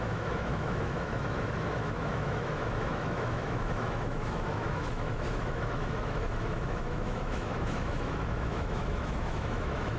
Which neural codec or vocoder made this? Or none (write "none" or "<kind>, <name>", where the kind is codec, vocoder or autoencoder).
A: autoencoder, DAC-VAE